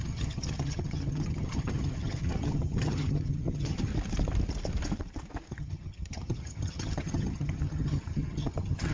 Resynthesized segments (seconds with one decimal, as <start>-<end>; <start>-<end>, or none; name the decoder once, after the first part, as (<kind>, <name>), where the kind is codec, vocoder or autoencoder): 0.0-3.9 (vocoder, HiFi-GAN); 5.5-8.9